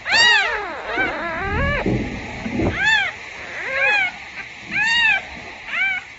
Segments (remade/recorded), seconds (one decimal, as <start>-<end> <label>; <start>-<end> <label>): 0.0-6.2 recorded